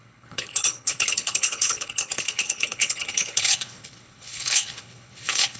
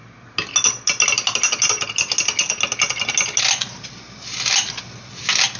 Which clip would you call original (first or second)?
second